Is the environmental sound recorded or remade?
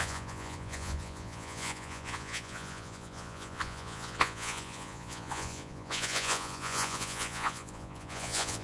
remade